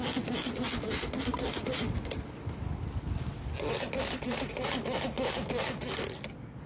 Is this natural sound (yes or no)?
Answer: yes